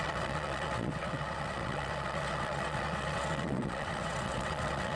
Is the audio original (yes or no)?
no